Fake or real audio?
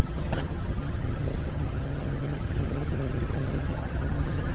fake